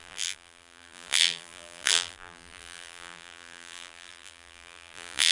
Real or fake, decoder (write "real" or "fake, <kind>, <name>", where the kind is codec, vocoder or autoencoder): fake, vocoder, BigVGAN v2